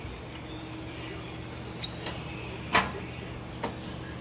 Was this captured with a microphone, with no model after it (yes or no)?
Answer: yes